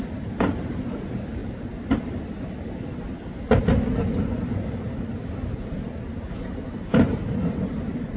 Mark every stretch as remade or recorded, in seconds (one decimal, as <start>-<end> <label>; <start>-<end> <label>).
0.0-8.2 recorded